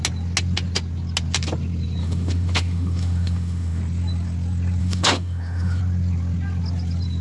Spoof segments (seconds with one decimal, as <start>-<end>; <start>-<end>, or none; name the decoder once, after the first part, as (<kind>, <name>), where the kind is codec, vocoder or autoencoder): 2.0-3.8 (autoencoder, DAC-VAE); 4.8-5.8